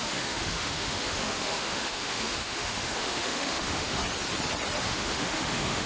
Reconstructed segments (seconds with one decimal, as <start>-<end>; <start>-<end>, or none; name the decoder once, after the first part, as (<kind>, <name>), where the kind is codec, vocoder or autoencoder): 0.0-4.0 (autoencoder, DAC-VAE); 4.8-5.9